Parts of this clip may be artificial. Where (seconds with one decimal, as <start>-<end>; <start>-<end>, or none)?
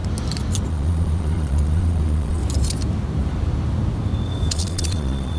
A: 0.7-2.4; 4.5-5.4